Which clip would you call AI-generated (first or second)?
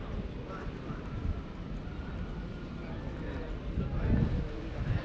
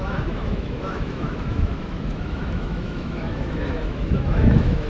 second